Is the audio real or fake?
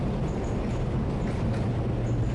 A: real